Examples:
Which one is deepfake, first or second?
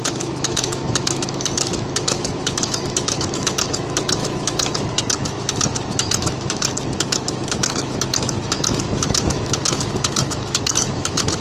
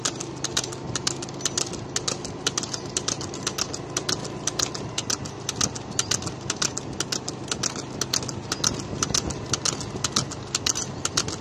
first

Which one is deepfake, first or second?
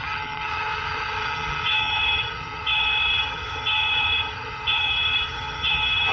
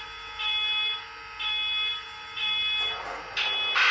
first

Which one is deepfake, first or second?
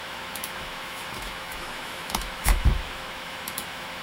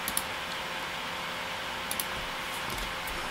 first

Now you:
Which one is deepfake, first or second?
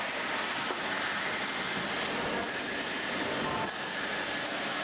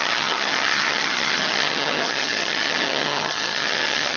second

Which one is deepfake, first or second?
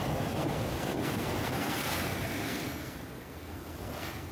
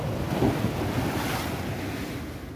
first